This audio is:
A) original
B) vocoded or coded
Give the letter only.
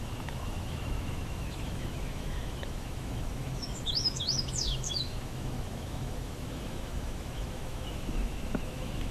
B